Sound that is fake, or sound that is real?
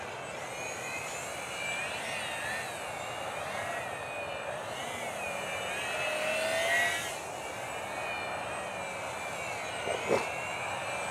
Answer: real